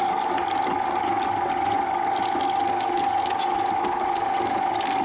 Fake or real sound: real